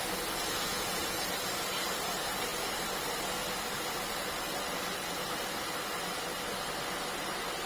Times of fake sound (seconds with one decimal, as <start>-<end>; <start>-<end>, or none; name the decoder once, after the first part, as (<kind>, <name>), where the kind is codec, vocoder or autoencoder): 0.7-1.3 (vocoder, Vocos)